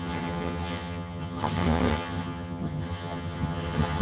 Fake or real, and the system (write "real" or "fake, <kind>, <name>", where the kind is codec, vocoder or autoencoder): fake, vocoder, HiFi-GAN